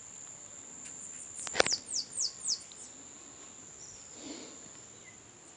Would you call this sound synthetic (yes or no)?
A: no